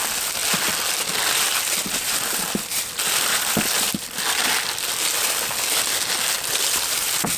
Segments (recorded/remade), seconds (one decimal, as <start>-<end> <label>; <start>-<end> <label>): 0.0-7.4 recorded